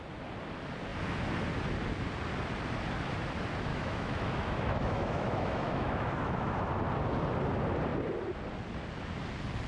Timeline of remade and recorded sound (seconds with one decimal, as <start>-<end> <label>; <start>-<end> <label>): 0.0-3.7 recorded; 3.7-6.7 remade; 6.7-9.7 recorded